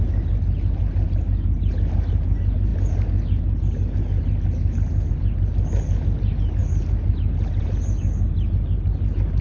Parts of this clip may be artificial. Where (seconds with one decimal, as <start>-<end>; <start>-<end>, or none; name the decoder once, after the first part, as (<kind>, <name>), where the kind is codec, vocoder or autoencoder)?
none